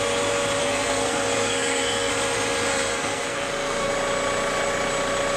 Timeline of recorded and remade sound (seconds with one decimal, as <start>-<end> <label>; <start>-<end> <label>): 0.0-0.6 recorded; 0.6-2.1 remade; 2.1-2.7 recorded; 2.7-3.9 remade; 3.9-5.4 recorded